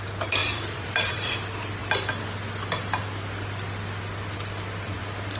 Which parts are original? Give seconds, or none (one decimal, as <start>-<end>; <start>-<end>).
0.0-0.4; 1.3-5.4